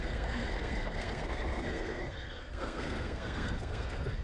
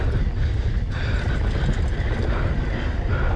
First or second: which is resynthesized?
first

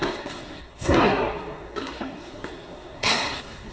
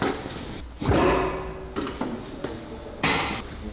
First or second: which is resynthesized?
first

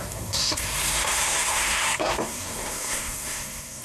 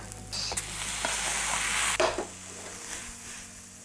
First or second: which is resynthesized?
first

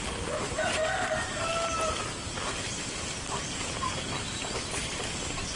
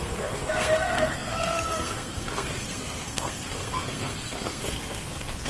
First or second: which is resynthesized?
second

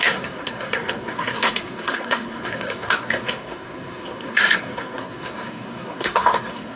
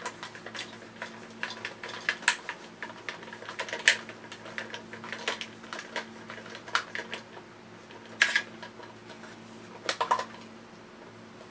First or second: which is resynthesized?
first